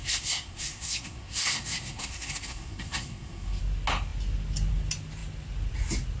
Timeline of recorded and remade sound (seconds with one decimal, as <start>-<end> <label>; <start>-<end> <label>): 0.0-3.6 remade; 3.6-6.2 recorded